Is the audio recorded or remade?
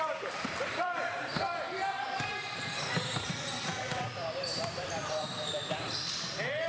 remade